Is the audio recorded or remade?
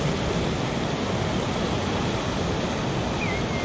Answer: recorded